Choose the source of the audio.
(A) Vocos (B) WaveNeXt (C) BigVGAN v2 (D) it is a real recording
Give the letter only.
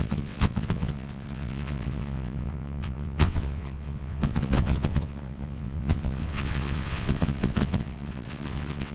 B